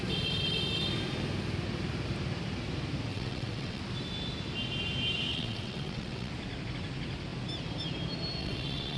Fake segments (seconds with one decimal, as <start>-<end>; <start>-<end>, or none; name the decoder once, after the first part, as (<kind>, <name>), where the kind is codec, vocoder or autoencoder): 3.1-3.8 (vocoder, WaveNeXt); 5.3-6.3; 8.4-9.0